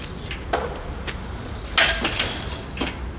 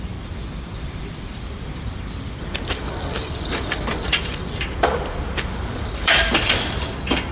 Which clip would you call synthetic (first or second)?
second